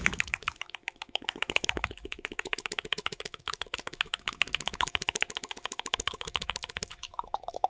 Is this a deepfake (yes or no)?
yes